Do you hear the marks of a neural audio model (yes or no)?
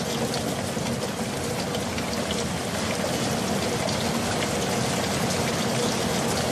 no